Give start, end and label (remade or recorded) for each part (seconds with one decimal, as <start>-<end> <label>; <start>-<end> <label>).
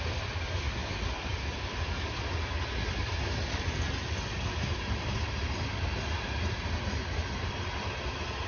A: 0.0-8.5 recorded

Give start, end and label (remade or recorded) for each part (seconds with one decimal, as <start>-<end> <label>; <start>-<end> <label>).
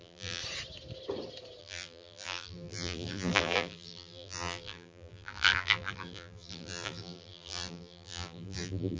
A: 0.0-0.4 remade; 0.4-1.6 recorded; 1.6-9.0 remade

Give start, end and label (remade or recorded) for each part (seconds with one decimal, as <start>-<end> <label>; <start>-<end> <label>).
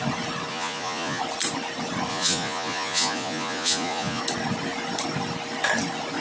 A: 0.0-0.5 recorded; 0.5-1.2 remade; 1.2-2.1 recorded; 2.1-4.2 remade; 4.2-6.2 recorded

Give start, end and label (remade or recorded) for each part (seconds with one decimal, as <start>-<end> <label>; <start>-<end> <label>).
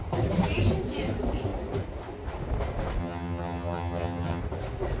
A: 0.0-3.0 recorded; 3.0-4.4 remade; 4.4-5.0 recorded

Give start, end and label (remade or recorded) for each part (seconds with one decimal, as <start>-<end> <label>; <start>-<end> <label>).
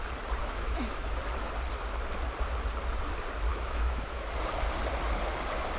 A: 0.0-0.4 recorded; 0.4-1.1 remade; 1.1-3.5 recorded; 3.5-4.3 remade; 4.3-5.8 recorded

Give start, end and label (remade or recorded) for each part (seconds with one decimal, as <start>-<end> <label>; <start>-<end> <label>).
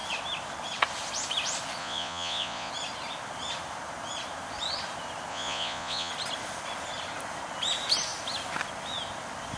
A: 0.0-1.8 recorded; 1.8-2.7 remade; 2.7-5.3 recorded; 5.3-6.1 remade; 6.1-9.6 recorded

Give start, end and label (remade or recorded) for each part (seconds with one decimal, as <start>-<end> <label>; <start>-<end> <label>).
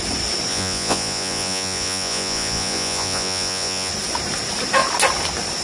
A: 0.0-0.5 recorded; 0.5-3.9 remade; 3.9-5.6 recorded